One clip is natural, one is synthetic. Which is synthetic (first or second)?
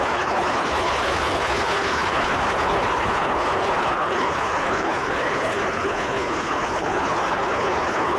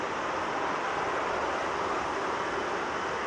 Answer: first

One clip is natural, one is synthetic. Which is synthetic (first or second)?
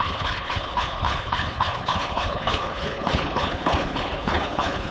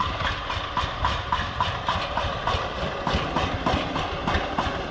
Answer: first